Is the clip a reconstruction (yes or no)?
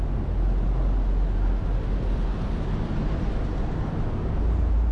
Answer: no